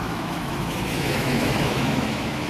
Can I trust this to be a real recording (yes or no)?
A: no